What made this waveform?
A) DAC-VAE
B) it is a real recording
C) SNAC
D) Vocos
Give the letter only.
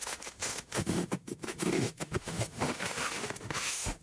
A